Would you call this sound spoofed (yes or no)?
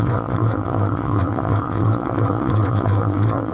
yes